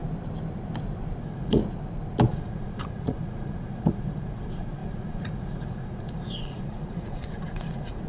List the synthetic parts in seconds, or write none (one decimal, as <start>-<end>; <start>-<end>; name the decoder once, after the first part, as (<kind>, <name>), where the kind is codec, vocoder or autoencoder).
1.2-1.6 (vocoder, Vocos); 2.3-8.1

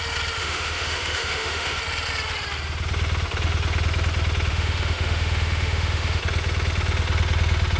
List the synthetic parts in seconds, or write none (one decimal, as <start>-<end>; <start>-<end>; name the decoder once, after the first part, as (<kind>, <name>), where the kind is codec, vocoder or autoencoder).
0.4-1.8 (autoencoder, DAC-VAE); 4.5-6.2

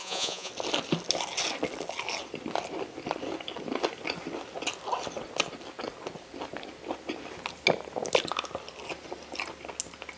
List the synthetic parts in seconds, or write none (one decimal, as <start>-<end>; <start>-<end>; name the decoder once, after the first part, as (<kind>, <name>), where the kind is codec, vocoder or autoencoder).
0.0-0.5 (vocoder, Vocos)

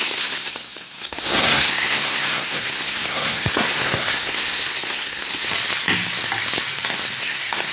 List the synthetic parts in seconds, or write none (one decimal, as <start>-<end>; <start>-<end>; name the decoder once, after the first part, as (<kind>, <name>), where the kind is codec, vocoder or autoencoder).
0.0-5.5 (codec, SNAC); 7.2-7.7